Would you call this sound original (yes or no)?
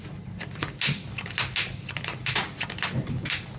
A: yes